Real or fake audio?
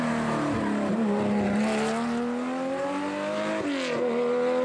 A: real